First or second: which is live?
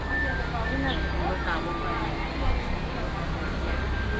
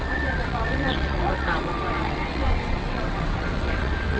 first